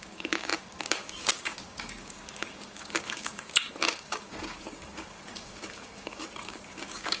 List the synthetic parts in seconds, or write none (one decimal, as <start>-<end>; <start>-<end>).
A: 0.0-7.2